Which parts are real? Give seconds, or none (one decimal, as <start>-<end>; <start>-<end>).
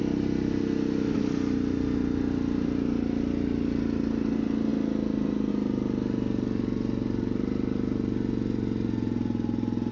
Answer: 0.0-9.9